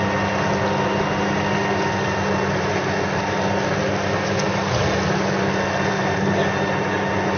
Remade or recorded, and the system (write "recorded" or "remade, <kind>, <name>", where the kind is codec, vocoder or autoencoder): recorded